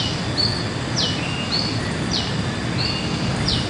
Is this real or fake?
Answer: real